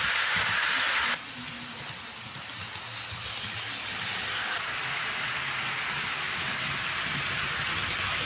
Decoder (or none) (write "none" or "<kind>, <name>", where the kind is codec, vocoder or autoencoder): none